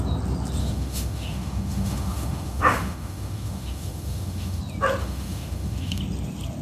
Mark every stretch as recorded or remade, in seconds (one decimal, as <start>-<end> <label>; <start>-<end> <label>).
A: 0.0-0.6 recorded; 0.6-4.6 remade; 4.6-5.0 recorded; 5.0-6.0 remade; 6.0-6.6 recorded